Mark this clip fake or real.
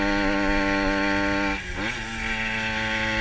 real